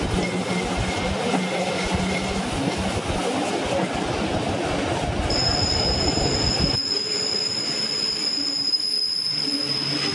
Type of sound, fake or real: real